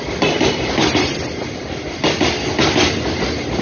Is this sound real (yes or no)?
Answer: yes